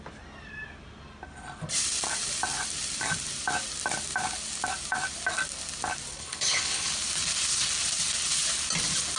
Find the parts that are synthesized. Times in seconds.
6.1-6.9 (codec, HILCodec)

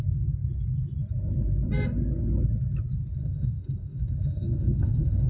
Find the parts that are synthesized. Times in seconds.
3.2-5.3 (autoencoder, DAC-VAE)

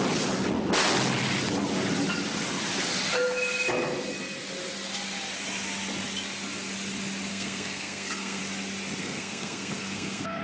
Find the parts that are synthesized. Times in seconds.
7.3-8.4 (codec, SNAC); 9.0-10.4

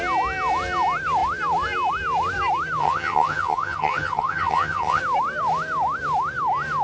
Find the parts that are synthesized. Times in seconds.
2.8-5.0 (vocoder, HiFi-GAN)

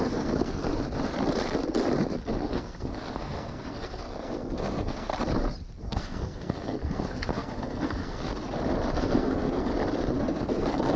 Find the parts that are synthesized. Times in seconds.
0.0-0.7 (codec, SNAC); 2.5-5.1; 5.8-8.3; 8.9-9.7; 10.2-11.0